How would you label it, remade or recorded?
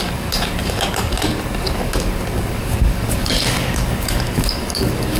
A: remade